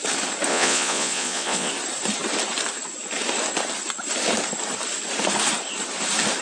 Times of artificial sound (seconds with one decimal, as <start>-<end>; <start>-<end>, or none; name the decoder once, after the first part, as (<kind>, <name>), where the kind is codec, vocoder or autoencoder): 0.5-1.7 (vocoder, Vocos)